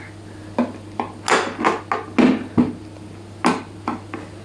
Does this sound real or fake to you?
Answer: real